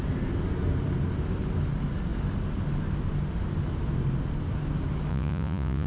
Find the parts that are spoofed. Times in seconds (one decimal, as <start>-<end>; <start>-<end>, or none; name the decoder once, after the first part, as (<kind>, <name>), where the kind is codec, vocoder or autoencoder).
5.1-5.9 (vocoder, Vocos)